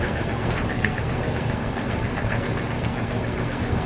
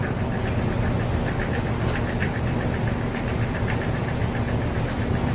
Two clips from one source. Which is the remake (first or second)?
first